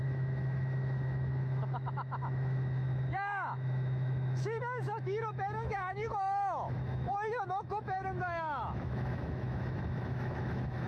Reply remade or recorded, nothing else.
remade